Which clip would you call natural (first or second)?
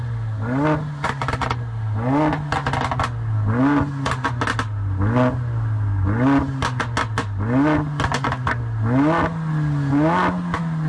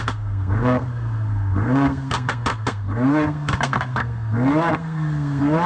first